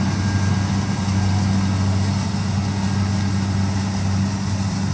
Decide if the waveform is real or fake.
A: real